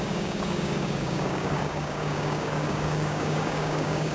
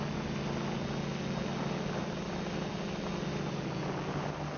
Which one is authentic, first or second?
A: second